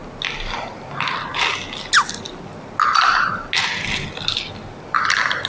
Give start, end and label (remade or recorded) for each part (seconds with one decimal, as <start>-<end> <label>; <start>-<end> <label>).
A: 0.0-5.5 recorded